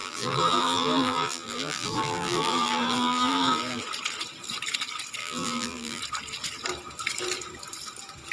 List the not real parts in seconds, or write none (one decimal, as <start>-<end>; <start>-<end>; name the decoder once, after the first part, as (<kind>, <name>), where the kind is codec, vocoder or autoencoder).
0.0-3.8 (vocoder, BigVGAN v2); 5.2-6.0